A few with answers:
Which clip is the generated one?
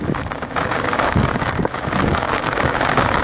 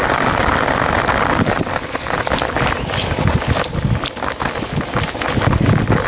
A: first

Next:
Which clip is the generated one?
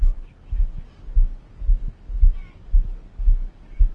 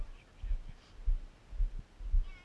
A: first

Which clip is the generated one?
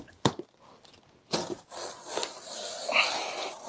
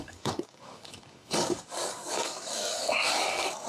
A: second